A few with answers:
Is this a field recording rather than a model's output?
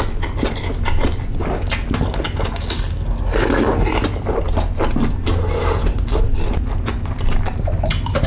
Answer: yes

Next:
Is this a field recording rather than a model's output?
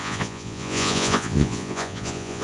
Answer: no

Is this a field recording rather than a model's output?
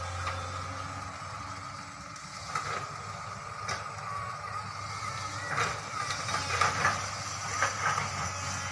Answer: yes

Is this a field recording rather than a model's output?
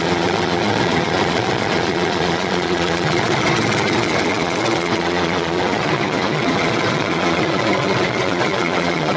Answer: no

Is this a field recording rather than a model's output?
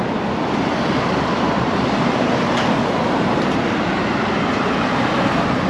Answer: no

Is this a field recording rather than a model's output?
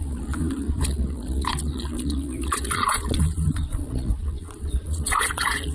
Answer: no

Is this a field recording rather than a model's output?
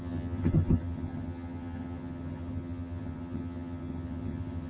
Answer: no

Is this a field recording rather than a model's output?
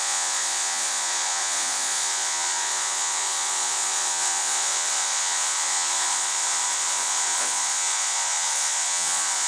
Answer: no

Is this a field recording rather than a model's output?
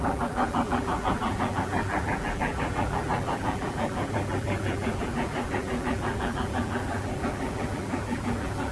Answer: no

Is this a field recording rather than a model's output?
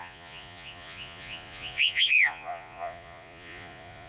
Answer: no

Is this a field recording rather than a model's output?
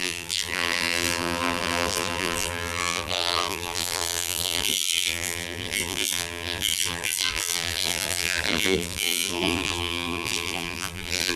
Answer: no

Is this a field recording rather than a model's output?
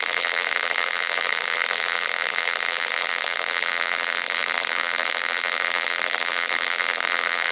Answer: no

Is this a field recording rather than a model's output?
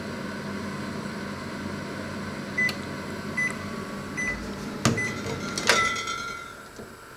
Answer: yes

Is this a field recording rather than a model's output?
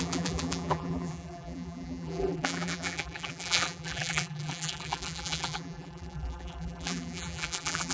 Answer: no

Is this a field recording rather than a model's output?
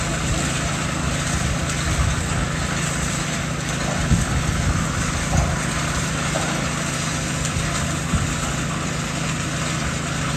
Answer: yes